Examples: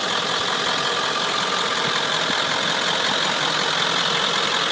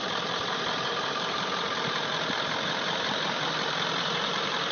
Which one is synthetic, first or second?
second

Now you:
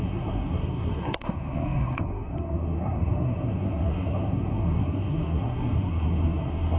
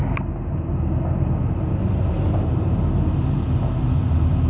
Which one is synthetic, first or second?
first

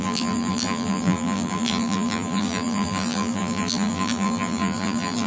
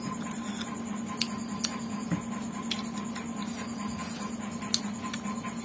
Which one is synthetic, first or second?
first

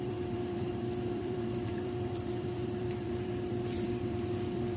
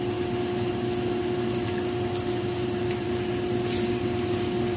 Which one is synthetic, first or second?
first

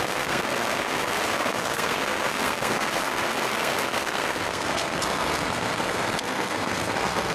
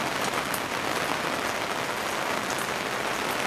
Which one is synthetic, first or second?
first